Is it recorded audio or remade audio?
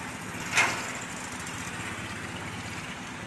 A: recorded